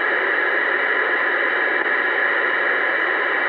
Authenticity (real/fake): real